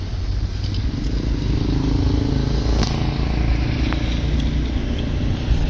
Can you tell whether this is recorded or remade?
recorded